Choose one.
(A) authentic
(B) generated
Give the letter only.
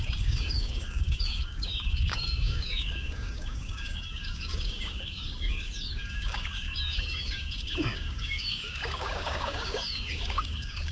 B